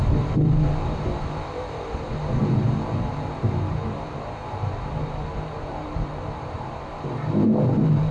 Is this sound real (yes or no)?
no